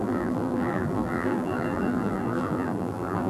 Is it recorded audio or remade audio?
remade